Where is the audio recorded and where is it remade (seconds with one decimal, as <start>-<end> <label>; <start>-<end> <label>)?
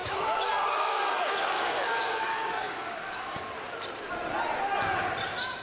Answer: 0.0-3.4 remade; 3.4-5.6 recorded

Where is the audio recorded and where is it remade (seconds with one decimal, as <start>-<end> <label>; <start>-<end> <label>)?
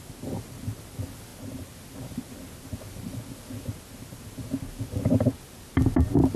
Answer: 0.0-6.4 recorded